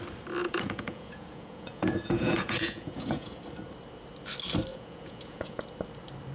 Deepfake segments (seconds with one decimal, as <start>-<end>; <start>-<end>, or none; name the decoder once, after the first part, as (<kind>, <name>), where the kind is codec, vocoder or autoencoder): 0.4-3.4 (vocoder, Vocos); 4.7-5.6